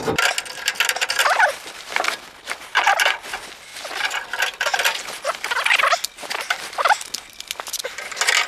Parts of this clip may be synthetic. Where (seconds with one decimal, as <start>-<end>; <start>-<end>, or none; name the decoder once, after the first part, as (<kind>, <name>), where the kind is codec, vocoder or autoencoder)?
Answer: none